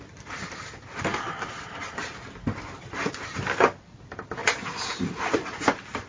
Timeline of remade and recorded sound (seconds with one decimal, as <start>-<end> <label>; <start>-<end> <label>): 0.0-6.1 recorded